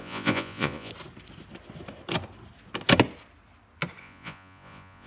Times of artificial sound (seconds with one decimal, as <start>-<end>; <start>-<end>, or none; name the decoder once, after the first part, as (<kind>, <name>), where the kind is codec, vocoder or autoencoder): 0.0-0.9 (vocoder, Vocos); 4.0-5.1